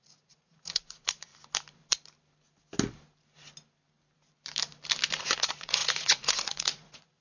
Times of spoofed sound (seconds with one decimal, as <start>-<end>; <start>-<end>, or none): 0.0-1.3; 5.2-7.2